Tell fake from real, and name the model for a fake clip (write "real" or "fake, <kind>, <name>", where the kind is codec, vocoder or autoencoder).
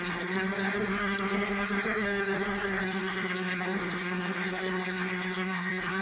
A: fake, codec, SNAC